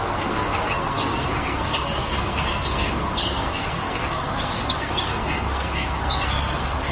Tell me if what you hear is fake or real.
fake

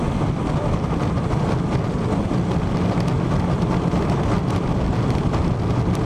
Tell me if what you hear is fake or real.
real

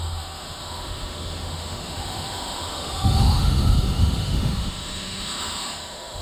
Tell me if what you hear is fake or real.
fake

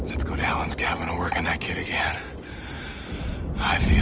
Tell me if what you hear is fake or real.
real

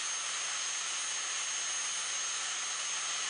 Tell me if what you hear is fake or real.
real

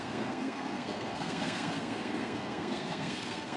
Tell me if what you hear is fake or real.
fake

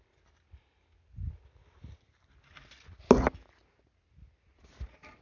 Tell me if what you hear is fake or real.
real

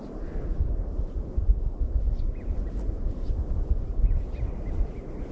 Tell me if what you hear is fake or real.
real